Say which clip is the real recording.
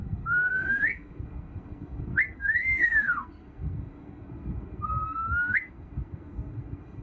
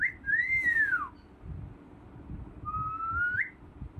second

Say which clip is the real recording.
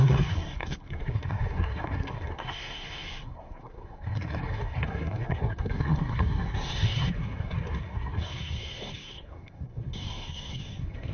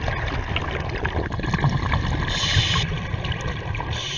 second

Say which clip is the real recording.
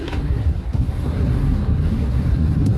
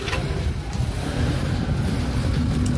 second